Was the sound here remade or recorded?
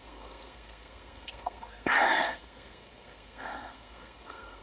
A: remade